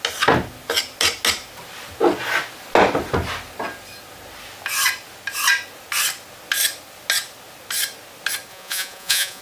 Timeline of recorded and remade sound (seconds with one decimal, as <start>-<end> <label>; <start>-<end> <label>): 0.0-8.5 recorded; 8.5-9.4 remade